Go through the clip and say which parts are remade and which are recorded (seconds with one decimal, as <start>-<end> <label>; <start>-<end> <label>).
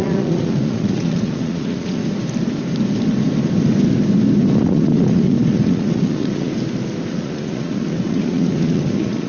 0.0-2.0 remade; 2.0-4.5 recorded; 4.5-6.5 remade; 6.5-7.1 recorded; 7.1-9.3 remade